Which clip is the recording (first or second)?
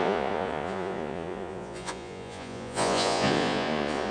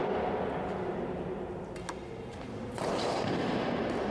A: second